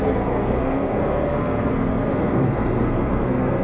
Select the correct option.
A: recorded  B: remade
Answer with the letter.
B